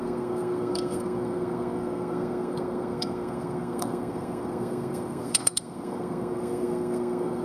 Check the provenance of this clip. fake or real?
fake